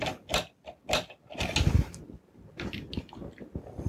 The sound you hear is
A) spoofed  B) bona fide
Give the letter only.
B